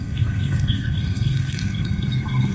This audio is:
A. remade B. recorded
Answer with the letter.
A